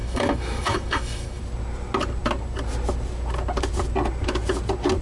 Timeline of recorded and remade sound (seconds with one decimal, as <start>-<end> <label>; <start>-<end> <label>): 0.0-1.4 remade; 1.4-5.0 recorded